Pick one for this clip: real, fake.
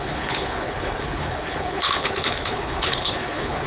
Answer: fake